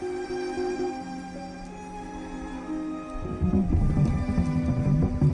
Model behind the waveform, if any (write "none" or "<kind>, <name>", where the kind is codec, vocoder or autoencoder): none